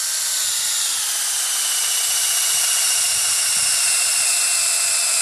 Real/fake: real